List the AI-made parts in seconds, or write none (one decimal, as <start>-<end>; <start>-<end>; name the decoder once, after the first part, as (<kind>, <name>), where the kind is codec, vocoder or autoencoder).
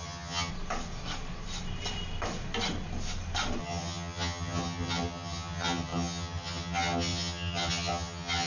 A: 0.0-0.5 (vocoder, HiFi-GAN); 3.6-8.5